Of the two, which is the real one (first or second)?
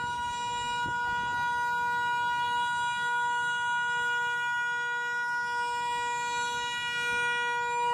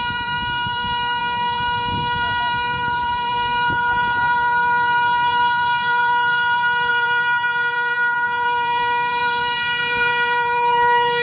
first